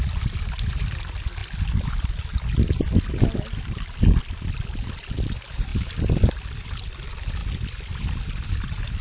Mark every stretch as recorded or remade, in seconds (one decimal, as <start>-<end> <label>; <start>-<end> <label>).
0.0-9.0 recorded

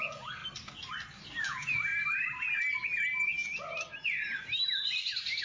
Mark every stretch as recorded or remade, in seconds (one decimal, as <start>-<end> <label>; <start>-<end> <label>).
0.0-0.4 remade; 0.4-1.5 recorded; 1.5-1.9 remade; 1.9-5.4 recorded

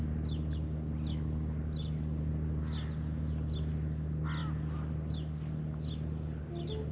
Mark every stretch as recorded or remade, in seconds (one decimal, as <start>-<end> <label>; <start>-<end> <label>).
0.0-6.9 recorded